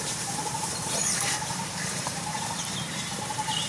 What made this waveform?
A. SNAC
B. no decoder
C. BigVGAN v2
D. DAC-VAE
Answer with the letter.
C